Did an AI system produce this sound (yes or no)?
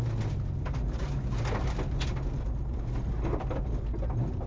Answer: no